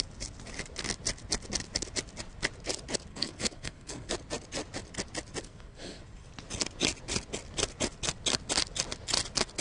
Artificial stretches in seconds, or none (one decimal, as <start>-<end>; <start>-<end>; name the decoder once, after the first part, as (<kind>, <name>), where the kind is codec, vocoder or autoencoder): 3.1-4.1 (codec, SNAC); 5.4-6.0